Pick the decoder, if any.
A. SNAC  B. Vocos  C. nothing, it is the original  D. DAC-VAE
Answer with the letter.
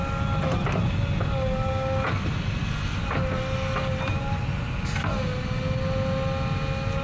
C